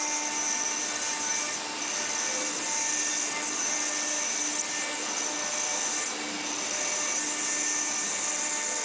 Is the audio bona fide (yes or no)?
yes